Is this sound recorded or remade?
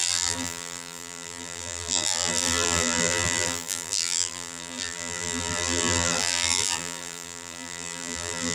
remade